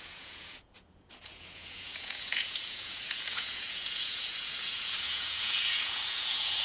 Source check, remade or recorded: remade